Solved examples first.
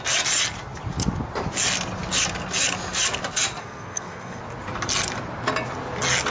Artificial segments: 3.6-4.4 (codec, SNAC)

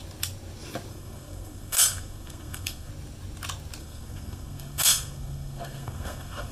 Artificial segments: 0.9-2.9 (codec, SNAC); 3.8-6.5

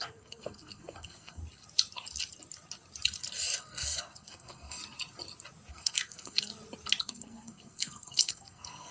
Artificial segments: 0.0-1.4 (codec, SNAC); 3.6-4.8; 5.7-6.5; 7.0-8.9